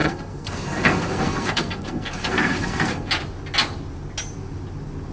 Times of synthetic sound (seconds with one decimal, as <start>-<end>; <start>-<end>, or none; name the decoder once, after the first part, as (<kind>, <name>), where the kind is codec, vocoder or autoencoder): 0.0-3.1 (codec, SNAC)